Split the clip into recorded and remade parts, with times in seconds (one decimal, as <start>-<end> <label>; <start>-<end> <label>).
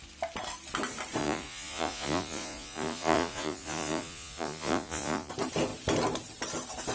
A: 0.0-1.2 recorded; 1.2-5.3 remade; 5.3-6.9 recorded